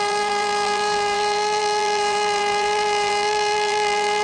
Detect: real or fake fake